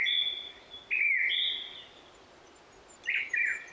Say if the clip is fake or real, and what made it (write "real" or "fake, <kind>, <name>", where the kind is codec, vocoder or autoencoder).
real